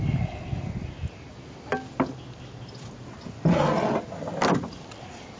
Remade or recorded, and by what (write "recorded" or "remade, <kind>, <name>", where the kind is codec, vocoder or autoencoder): recorded